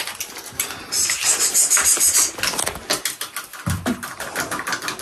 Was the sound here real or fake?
real